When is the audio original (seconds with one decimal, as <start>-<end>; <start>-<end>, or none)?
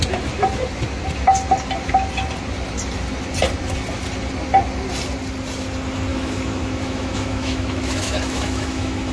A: 0.0-6.1